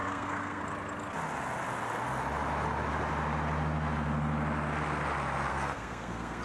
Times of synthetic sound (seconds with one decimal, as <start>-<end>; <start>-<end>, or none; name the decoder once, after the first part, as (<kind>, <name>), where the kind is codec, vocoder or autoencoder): 0.0-0.6 (codec, SNAC); 5.5-6.4